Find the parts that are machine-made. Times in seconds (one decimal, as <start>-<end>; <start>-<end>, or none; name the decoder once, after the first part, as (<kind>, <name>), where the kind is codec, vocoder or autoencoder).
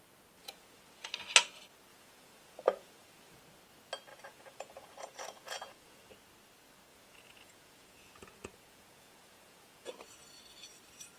0.4-1.1 (vocoder, Vocos); 1.9-3.4; 4.1-6.1; 6.9-9.9